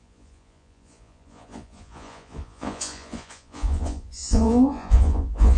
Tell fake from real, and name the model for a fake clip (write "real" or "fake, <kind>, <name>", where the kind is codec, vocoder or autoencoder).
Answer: fake, vocoder, Vocos